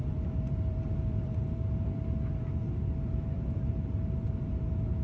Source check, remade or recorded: remade